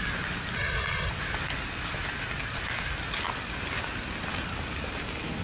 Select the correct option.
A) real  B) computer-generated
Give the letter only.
A